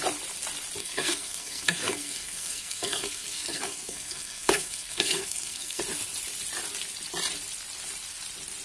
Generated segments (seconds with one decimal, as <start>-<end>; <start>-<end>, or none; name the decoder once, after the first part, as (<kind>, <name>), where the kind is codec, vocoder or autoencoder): 0.8-5.8 (codec, SNAC)

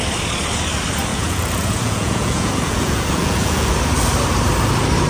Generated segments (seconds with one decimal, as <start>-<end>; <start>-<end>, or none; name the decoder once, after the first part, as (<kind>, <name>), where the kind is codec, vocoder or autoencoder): 1.1-3.7 (vocoder, Vocos)

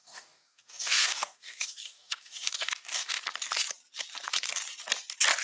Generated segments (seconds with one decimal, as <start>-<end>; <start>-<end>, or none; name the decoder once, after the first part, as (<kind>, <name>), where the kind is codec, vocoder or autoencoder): 0.0-3.2 (codec, DAC)

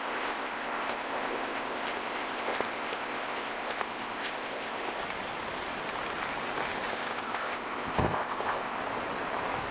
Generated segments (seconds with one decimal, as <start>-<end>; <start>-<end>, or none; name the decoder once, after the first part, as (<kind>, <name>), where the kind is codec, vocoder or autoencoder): 0.0-5.0 (codec, ZipCodec); 6.9-8.8

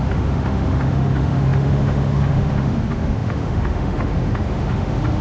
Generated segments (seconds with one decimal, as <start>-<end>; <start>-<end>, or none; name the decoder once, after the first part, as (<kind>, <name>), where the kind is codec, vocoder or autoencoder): 0.0-5.2 (autoencoder, DAC-VAE)

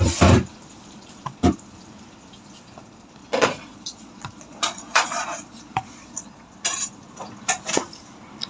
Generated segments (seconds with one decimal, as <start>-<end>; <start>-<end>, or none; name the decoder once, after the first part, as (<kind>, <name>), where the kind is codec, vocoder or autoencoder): 3.2-6.5 (vocoder, Vocos)

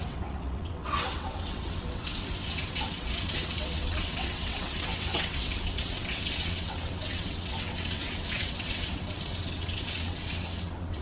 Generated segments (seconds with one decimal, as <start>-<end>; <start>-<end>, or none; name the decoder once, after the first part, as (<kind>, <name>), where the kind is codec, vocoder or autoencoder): 0.0-11.0 (vocoder, WaveNeXt)

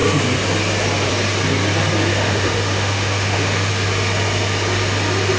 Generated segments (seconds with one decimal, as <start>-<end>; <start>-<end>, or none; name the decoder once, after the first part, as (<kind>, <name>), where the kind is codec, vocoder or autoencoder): 2.1-3.7 (autoencoder, DAC-VAE)